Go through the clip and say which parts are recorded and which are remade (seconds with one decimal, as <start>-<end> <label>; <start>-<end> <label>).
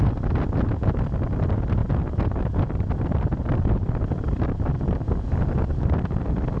0.0-1.8 recorded; 1.8-4.9 remade; 4.9-6.6 recorded